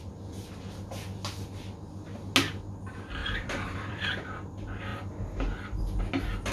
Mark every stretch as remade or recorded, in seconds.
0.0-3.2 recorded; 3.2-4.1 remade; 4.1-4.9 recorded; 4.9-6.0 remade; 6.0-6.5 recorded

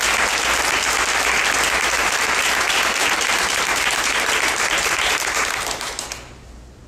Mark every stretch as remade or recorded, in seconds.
0.0-2.0 recorded; 2.0-6.1 remade; 6.1-6.9 recorded

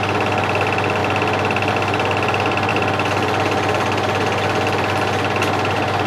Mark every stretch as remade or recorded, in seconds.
0.0-6.1 recorded

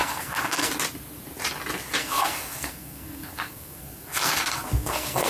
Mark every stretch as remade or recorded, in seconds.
0.0-0.7 remade; 0.7-2.0 recorded; 2.0-5.3 remade